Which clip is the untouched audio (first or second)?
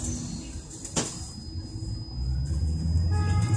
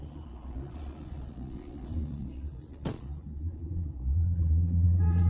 first